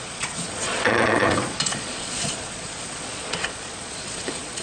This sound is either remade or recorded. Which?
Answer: remade